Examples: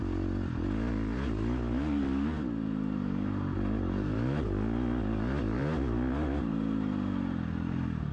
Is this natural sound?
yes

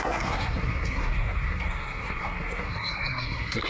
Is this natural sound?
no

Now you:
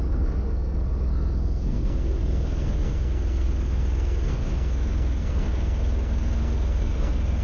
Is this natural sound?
no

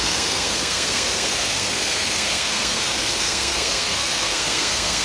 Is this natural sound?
no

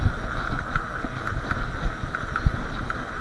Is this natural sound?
yes